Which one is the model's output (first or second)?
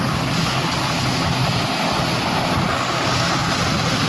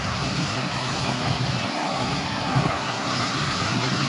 second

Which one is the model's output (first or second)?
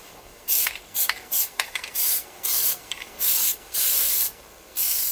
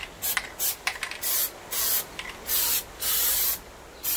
first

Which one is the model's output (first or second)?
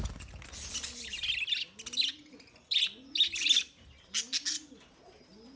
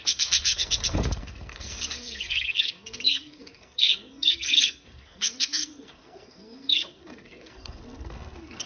second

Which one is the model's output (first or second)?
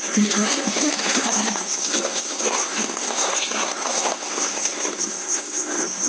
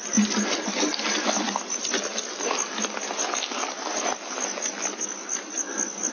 first